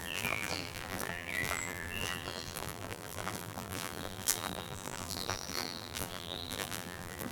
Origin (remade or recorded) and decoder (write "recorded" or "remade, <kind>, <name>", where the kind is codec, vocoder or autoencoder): remade, vocoder, BigVGAN v2